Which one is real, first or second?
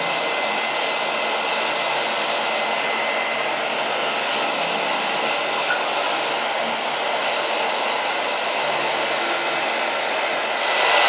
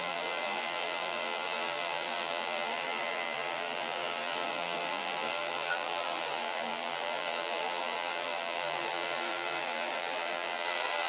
first